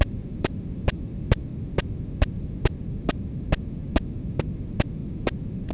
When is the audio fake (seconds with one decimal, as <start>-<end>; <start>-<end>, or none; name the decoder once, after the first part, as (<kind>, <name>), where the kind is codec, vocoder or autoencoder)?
0.0-1.5 (vocoder, BigVGAN v2); 4.4-5.0